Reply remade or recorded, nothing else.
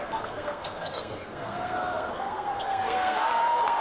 remade